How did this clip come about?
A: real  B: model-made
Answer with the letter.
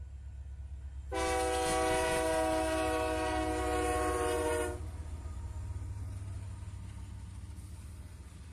A